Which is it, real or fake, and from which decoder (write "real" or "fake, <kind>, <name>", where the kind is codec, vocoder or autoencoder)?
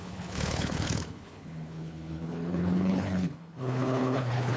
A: fake, codec, HILCodec